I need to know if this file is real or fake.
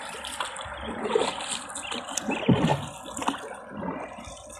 real